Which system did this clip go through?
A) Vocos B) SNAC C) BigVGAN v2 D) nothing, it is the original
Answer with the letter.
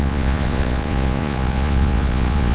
A